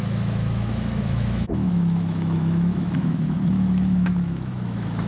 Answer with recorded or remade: remade